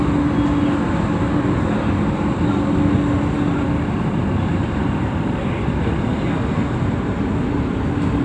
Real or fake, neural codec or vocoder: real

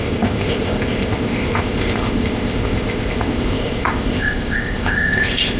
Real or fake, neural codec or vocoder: fake, codec, ZipCodec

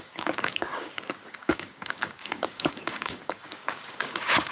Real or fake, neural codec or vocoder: fake, codec, DAC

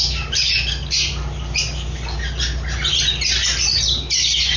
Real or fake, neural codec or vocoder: real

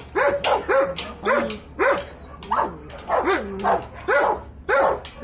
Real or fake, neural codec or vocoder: real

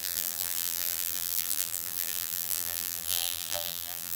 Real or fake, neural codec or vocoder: fake, vocoder, BigVGAN v2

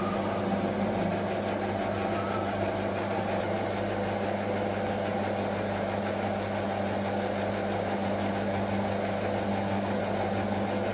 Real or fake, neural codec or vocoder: real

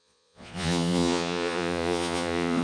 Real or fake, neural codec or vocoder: fake, vocoder, Vocos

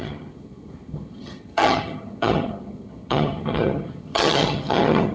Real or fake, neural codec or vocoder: fake, vocoder, HiFi-GAN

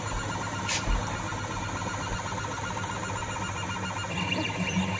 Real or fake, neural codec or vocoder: real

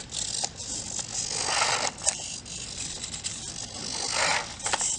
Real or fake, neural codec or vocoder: real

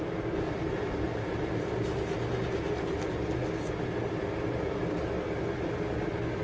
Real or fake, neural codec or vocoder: real